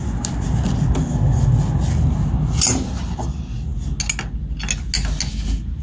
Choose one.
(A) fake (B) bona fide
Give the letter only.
B